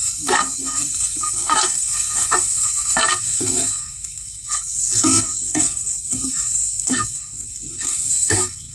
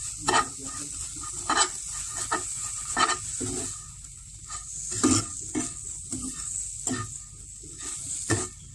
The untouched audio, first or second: second